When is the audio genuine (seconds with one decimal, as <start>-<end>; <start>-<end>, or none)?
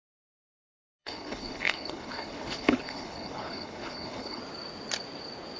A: 0.0-1.0; 4.4-5.6